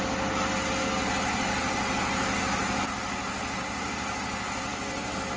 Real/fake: real